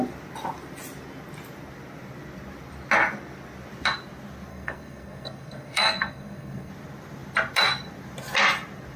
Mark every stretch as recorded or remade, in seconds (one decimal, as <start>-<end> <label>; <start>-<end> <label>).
0.0-4.5 recorded; 4.5-6.7 remade; 6.7-9.0 recorded